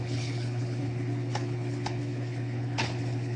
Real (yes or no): no